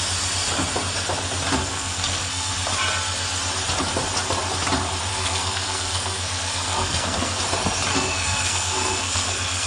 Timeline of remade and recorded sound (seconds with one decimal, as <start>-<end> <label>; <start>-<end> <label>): 0.0-1.6 recorded; 1.6-2.5 remade; 2.5-5.1 recorded; 5.1-7.4 remade; 7.4-7.9 recorded; 7.9-9.7 remade